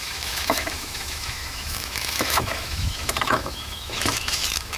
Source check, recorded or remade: remade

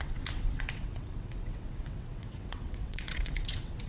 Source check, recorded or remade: remade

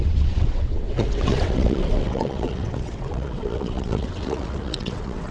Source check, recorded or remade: remade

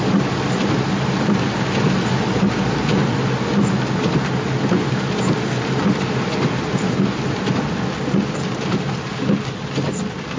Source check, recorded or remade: recorded